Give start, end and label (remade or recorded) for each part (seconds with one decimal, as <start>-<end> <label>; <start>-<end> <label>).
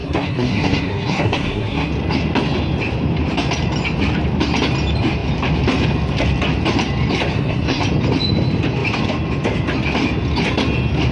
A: 0.0-1.9 remade; 1.9-7.3 recorded; 7.3-7.8 remade; 7.8-11.1 recorded